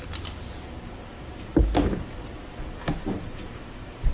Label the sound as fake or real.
real